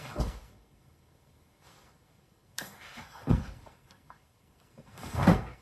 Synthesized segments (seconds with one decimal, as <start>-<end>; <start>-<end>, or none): 0.0-5.6